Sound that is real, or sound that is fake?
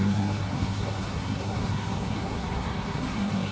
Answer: fake